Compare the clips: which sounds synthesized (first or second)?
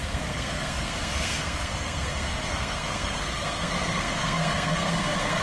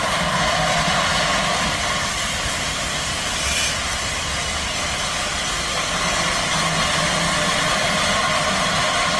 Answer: first